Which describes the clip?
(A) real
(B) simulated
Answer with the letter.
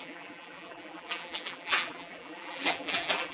B